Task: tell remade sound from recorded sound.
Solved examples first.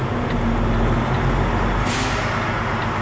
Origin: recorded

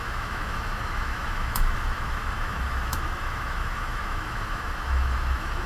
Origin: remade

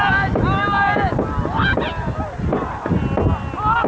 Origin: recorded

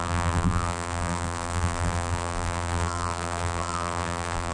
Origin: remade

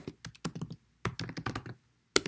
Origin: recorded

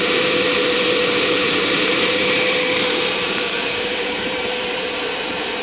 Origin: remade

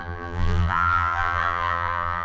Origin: remade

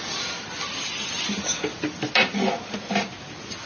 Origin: recorded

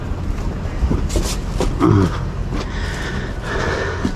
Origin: recorded